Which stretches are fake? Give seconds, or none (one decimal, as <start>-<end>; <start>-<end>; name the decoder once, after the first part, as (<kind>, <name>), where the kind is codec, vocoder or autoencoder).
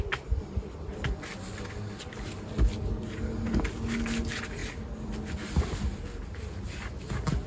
none